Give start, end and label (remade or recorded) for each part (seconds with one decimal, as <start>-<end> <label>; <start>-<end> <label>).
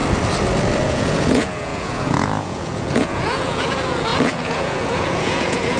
0.0-0.8 recorded; 0.8-5.8 remade